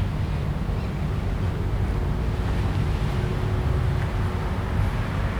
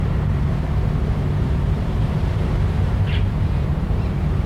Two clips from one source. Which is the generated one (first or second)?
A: second